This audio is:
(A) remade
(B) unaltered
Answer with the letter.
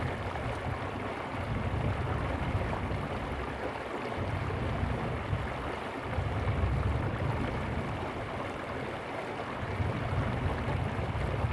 B